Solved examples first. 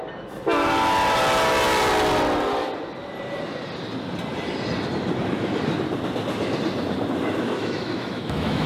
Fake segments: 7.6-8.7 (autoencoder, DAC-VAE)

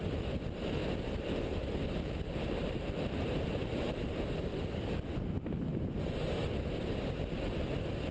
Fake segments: none

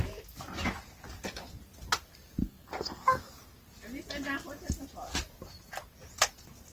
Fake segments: 2.4-3.3 (codec, SNAC)

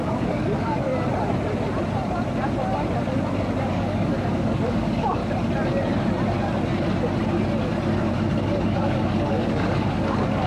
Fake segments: 0.0-0.9 (codec, DAC); 3.7-5.2; 8.6-10.5